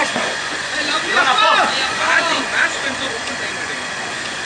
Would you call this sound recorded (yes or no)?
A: no